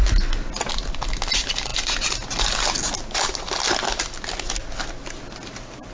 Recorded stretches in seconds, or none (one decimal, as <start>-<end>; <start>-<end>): 0.0-5.9